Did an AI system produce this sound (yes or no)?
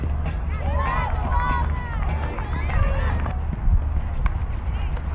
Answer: no